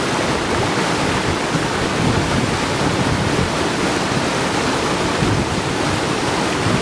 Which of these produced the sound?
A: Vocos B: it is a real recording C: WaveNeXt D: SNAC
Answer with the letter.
B